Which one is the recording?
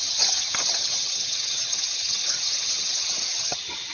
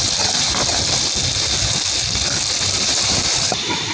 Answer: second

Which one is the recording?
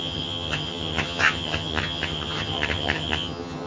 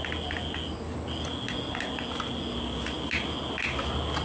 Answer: second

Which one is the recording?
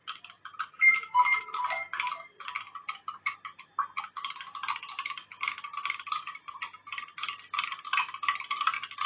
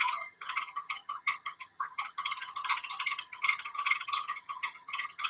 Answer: first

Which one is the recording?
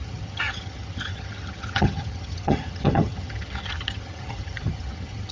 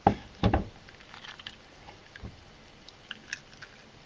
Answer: second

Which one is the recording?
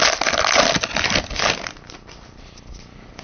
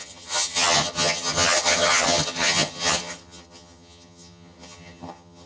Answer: first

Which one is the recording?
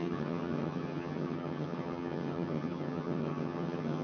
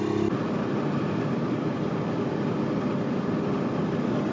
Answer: second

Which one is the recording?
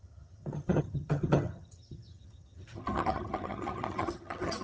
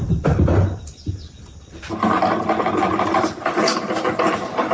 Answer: second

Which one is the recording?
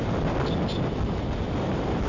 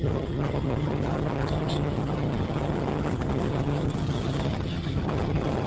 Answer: first